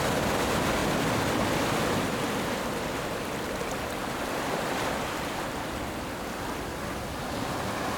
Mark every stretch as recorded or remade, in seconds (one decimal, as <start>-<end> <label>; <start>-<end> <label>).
0.0-8.0 recorded